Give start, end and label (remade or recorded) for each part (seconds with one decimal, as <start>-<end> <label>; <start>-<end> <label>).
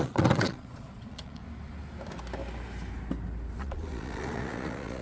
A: 0.0-1.4 remade; 1.4-3.6 recorded; 3.6-5.0 remade